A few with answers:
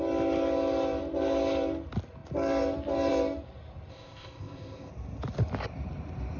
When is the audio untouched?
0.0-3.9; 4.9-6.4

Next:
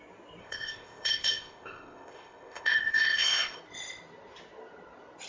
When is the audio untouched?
0.0-0.4; 3.6-5.3

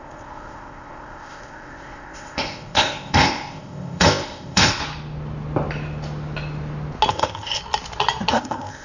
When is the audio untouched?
4.8-7.1; 7.6-8.3